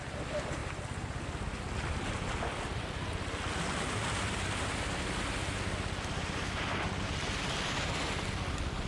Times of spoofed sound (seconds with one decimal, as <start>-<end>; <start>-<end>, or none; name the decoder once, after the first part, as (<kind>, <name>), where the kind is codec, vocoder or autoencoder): none